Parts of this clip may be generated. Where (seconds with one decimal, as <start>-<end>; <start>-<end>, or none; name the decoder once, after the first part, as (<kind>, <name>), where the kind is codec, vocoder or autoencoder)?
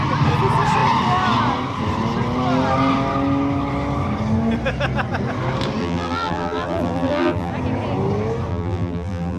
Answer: 5.8-7.5 (vocoder, BigVGAN v2); 8.5-9.4